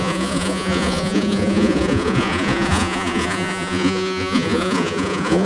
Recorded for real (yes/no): no